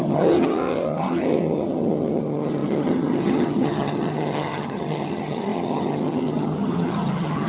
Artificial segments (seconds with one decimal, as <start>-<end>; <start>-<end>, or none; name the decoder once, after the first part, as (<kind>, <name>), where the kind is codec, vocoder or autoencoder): 0.0-7.5 (vocoder, HiFi-GAN)